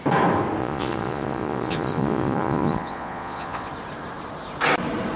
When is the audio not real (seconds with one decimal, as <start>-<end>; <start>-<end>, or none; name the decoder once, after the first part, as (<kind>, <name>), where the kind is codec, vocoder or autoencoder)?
0.6-3.7 (vocoder, Vocos)